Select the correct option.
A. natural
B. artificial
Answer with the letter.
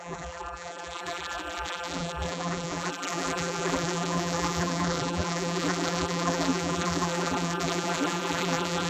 B